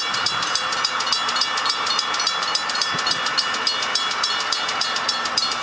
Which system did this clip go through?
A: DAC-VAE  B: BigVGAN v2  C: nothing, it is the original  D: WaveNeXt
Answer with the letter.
B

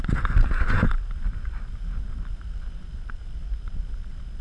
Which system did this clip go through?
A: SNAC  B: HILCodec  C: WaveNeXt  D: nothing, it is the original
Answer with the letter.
D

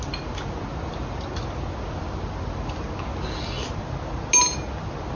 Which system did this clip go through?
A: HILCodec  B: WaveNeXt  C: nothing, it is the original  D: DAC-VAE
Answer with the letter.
C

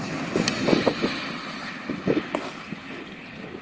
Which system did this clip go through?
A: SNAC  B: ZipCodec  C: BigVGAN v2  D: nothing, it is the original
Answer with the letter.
D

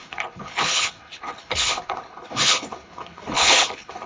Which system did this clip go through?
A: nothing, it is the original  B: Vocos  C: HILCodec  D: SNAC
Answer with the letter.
C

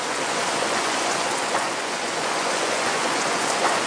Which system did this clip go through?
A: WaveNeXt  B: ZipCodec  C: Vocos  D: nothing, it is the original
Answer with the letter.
C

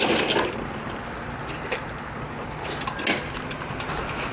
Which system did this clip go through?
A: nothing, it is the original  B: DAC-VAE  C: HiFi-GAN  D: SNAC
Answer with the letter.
A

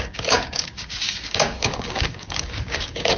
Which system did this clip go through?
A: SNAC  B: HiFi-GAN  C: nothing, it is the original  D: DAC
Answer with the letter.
D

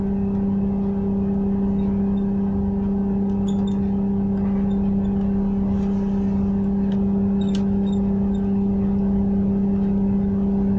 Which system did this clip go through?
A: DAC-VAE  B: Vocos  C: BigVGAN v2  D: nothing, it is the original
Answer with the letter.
D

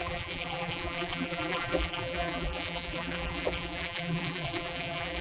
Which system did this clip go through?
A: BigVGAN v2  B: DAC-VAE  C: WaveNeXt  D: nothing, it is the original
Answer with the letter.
A